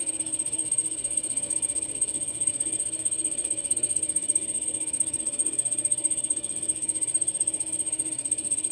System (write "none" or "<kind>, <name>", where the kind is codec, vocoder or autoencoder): codec, SNAC